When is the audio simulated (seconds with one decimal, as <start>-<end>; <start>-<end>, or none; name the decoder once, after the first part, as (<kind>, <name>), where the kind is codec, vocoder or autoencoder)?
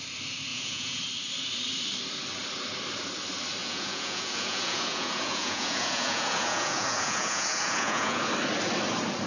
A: 0.5-1.0 (vocoder, Vocos); 3.6-8.3